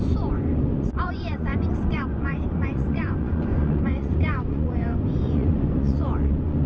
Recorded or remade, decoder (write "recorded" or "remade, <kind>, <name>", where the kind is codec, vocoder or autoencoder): remade, vocoder, Vocos